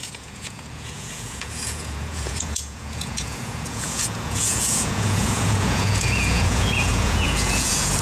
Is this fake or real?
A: fake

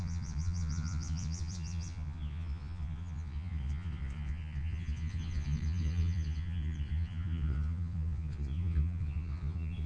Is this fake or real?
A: fake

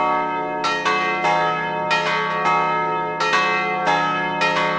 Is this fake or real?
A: real